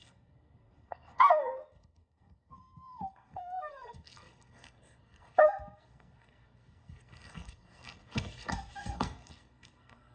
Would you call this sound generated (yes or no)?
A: yes